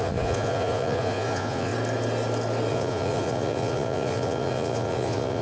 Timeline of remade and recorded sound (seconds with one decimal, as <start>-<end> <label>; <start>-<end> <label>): 0.0-1.7 remade; 1.7-2.7 recorded; 2.7-5.4 remade

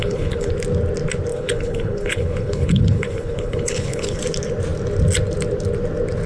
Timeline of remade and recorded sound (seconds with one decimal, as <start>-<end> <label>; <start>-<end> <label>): 0.0-0.5 remade; 0.5-1.3 recorded; 1.3-4.2 remade; 4.2-6.3 recorded